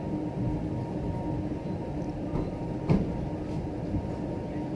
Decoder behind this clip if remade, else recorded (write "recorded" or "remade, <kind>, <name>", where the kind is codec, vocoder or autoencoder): recorded